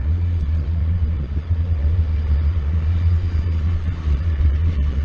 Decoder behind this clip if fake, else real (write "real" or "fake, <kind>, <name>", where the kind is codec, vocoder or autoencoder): fake, vocoder, Vocos